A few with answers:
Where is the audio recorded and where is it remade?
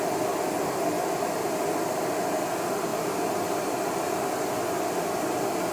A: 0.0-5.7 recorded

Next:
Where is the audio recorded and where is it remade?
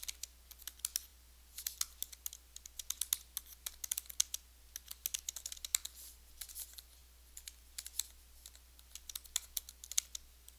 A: 0.0-10.6 recorded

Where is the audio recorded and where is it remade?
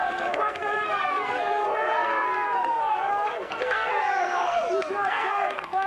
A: 0.0-5.9 remade